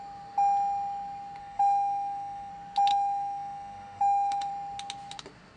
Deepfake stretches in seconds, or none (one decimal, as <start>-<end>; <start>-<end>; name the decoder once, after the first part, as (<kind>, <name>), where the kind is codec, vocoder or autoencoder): 1.4-2.5 (autoencoder, DAC-VAE); 2.9-4.5